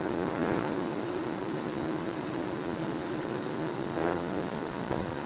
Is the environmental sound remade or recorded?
remade